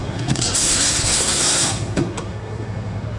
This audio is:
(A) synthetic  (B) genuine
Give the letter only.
A